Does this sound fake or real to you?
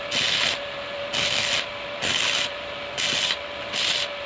real